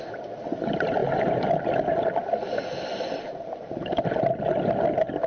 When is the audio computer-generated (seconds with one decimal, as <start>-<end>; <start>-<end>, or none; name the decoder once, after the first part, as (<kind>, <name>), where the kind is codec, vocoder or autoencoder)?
none